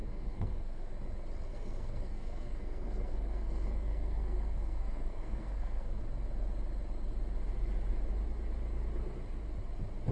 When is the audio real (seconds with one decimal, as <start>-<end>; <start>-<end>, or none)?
0.9-1.5; 6.0-10.1